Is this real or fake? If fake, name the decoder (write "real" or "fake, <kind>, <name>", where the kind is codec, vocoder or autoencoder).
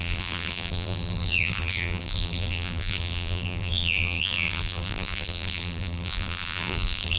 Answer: fake, vocoder, BigVGAN v2